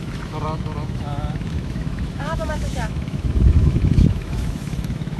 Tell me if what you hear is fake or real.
fake